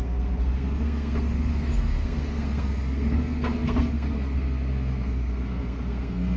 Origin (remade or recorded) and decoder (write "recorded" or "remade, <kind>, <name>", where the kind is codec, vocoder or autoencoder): remade, codec, SNAC